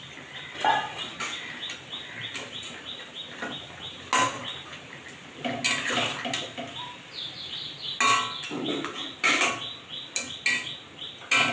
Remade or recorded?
recorded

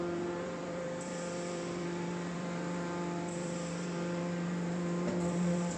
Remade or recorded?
remade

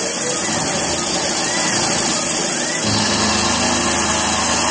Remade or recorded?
recorded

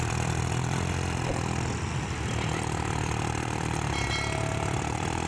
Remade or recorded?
remade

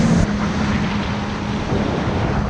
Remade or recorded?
recorded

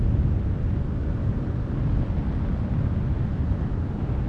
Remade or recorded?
recorded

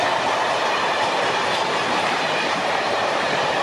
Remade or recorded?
remade